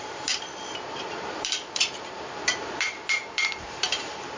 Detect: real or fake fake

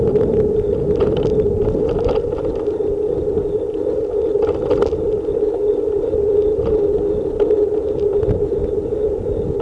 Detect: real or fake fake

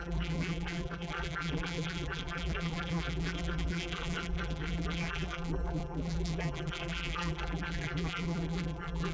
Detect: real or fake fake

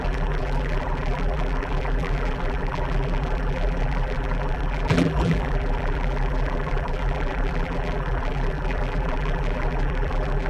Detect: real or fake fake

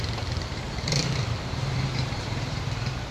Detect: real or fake fake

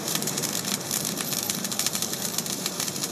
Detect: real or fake fake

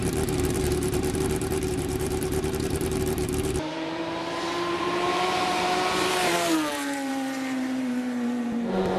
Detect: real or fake fake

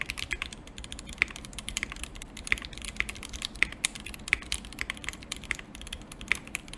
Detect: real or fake fake